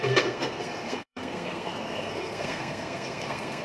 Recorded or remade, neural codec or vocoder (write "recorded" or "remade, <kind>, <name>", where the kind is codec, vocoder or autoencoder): remade, codec, SNAC